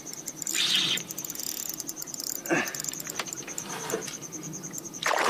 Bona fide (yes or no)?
no